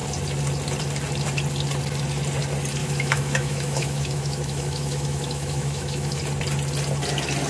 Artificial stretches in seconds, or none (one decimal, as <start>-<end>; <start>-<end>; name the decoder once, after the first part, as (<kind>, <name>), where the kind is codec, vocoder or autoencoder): 2.8-6.2 (autoencoder, DAC-VAE)